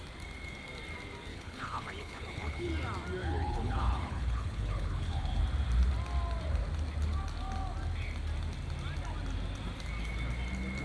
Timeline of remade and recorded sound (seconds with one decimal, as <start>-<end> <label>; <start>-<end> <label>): 0.0-1.3 recorded; 1.3-2.7 remade; 2.7-3.2 recorded; 3.2-5.4 remade; 5.4-10.8 recorded